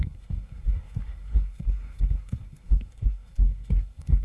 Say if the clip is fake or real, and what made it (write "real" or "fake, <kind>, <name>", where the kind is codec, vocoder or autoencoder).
fake, codec, SNAC